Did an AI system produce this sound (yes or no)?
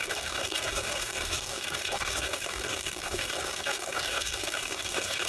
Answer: yes